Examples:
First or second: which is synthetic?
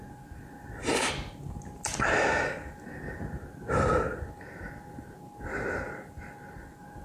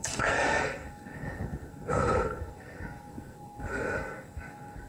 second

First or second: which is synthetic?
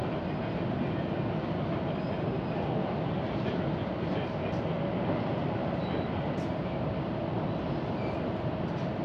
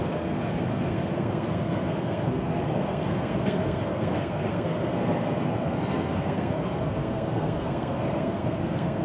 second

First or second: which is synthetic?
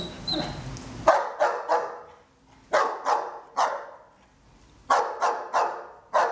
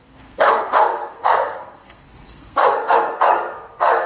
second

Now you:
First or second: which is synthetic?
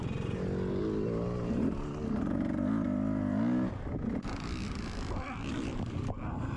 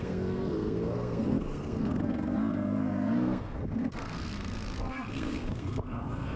second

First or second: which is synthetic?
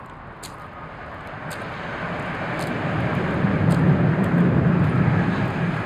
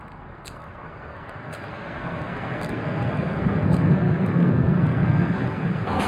second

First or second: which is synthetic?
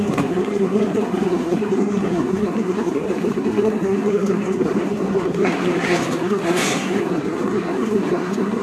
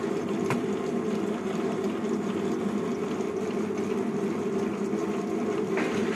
first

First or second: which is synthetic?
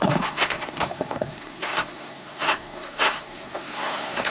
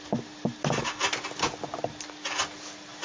first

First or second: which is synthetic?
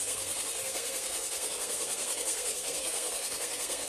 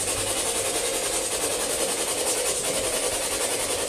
first